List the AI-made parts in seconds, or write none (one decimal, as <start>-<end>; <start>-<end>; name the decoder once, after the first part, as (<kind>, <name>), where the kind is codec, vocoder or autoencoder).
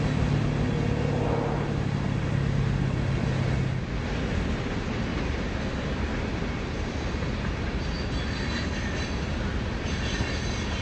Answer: 5.1-8.5 (vocoder, BigVGAN v2); 9.3-10.0